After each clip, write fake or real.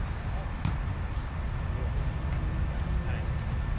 real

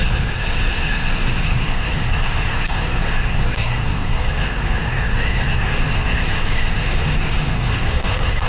fake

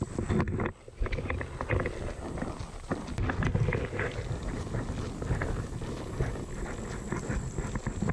real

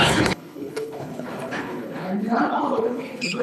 fake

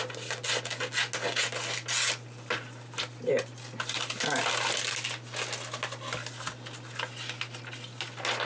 real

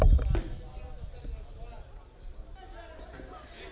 real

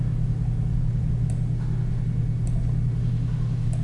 real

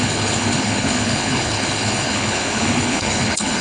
fake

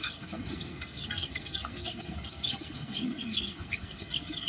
fake